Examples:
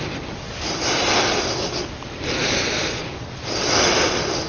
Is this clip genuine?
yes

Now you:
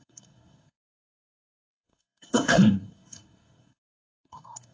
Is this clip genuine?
no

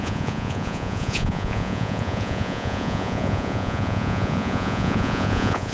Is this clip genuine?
no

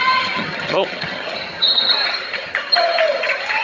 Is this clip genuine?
no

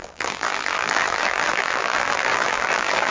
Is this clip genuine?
no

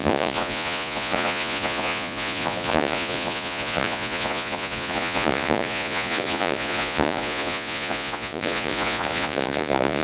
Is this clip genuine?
no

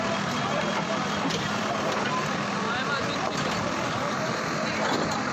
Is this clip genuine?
no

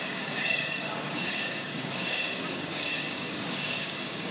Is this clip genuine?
no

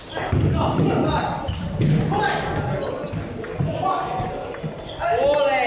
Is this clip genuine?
yes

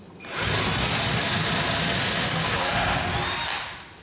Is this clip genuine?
yes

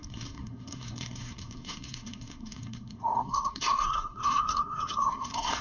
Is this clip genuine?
no